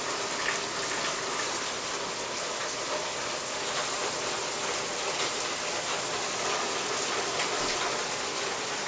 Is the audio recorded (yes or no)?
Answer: yes